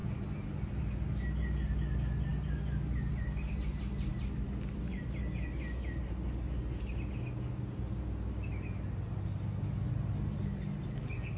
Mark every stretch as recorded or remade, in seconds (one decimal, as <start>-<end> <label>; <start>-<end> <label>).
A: 0.0-11.4 recorded